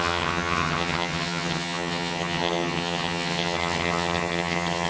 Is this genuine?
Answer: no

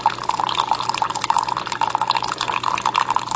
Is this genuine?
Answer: yes